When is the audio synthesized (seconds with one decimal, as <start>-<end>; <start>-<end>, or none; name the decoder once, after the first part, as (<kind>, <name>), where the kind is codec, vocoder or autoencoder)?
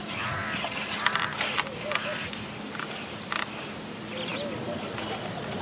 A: none